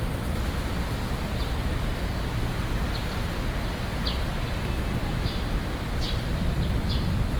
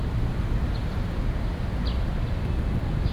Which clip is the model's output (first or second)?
second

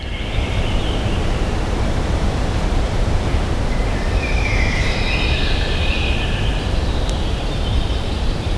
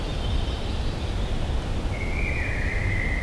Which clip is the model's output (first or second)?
first